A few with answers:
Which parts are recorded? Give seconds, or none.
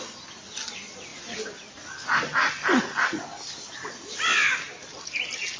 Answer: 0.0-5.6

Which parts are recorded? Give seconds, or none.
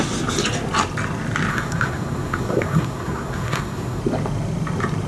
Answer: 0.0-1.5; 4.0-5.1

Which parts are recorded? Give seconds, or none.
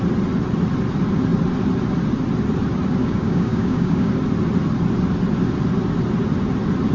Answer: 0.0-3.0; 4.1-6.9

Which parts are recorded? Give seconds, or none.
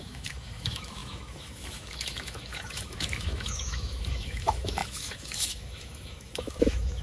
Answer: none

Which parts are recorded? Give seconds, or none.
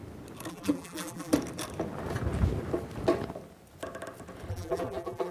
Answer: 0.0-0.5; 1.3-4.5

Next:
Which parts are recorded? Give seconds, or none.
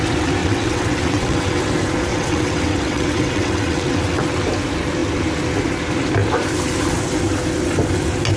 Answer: 0.0-0.4; 1.6-2.1; 4.2-8.4